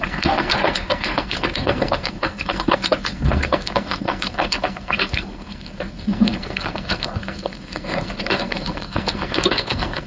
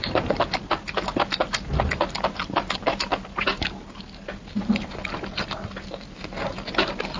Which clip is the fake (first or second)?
first